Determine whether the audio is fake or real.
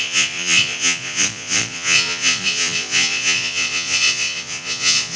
fake